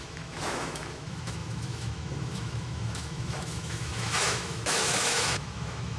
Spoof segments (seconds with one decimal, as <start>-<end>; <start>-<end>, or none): 0.0-6.0